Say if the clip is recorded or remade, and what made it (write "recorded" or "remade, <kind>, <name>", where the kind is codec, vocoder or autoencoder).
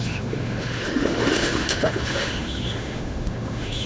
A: remade, autoencoder, DAC-VAE